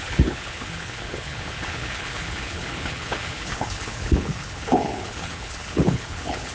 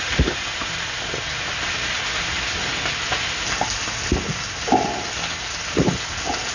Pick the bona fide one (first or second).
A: second